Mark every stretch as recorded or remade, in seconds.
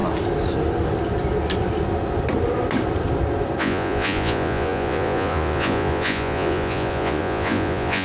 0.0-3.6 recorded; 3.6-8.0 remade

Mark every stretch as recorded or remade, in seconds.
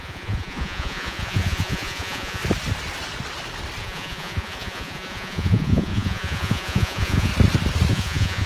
0.0-2.4 remade; 2.4-3.8 recorded; 3.8-7.3 remade; 7.3-7.9 recorded; 7.9-8.5 remade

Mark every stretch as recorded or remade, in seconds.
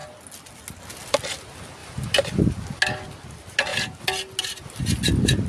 0.0-1.8 recorded; 1.8-2.4 remade; 2.4-5.5 recorded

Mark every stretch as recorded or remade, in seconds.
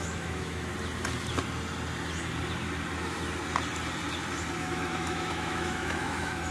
0.0-0.7 remade; 0.7-4.6 recorded; 4.6-6.5 remade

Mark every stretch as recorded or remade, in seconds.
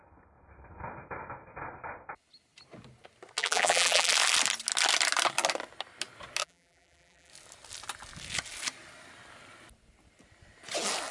0.0-3.4 recorded; 3.4-4.1 remade; 4.1-6.4 recorded; 6.4-7.3 remade; 7.3-11.1 recorded